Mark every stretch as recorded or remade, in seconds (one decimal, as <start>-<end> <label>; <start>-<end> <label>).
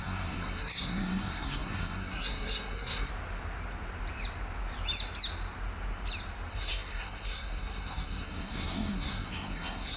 0.0-3.1 remade; 3.1-6.5 recorded; 6.5-10.0 remade